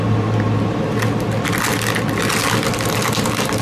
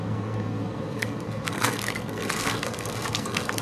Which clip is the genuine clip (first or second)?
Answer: first